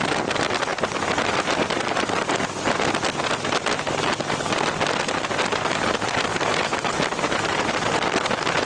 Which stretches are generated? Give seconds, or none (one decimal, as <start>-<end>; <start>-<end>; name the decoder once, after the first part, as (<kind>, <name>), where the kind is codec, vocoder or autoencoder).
none